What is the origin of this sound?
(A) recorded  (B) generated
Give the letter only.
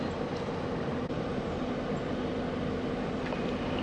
A